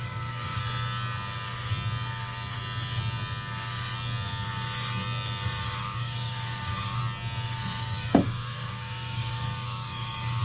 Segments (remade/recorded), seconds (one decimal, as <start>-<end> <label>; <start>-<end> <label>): 0.0-0.6 remade; 0.6-5.6 recorded; 5.6-7.0 remade; 7.0-7.8 recorded; 7.8-10.4 remade